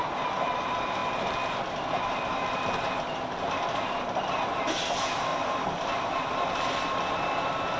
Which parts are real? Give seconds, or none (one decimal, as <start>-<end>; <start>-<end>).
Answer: 0.0-7.8